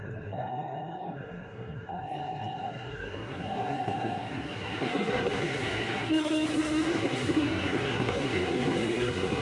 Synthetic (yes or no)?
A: yes